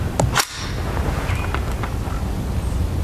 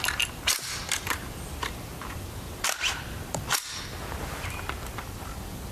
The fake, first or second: second